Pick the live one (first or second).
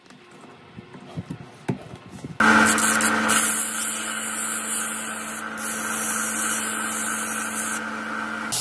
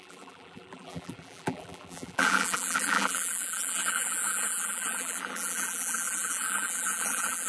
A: first